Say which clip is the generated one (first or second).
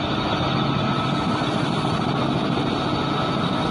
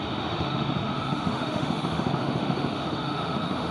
second